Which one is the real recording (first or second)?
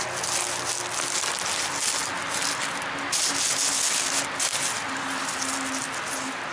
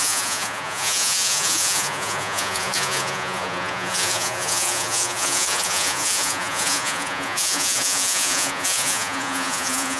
first